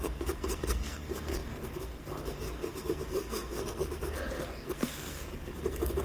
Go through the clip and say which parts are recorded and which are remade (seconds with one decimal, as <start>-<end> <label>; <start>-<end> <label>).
0.0-6.0 remade